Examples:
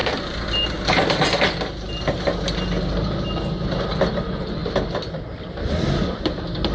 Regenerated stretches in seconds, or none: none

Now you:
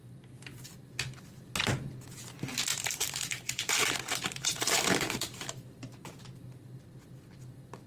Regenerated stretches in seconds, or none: 2.7-6.2 (vocoder, BigVGAN v2)

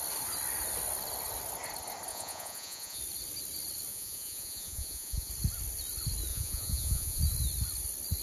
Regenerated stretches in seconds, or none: 2.1-3.0 (vocoder, Vocos); 3.9-5.3; 6.3-7.2

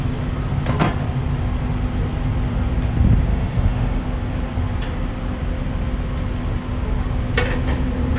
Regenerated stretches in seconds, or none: 3.3-4.0 (autoencoder, DAC-VAE)

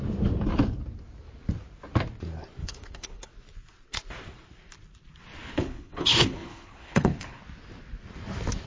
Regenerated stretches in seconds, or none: 2.6-3.3 (codec, HILCodec); 5.4-7.4

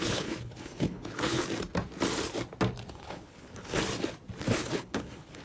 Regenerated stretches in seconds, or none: 0.0-1.4 (codec, HILCodec); 2.9-3.8; 4.4-5.4